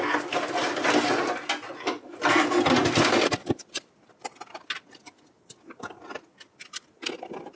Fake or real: real